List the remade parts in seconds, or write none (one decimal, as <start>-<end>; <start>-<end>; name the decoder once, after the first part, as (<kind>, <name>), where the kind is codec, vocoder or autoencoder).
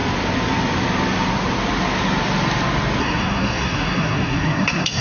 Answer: 3.0-5.0 (codec, SNAC)